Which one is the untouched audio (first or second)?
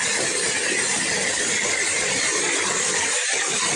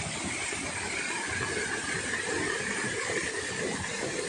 first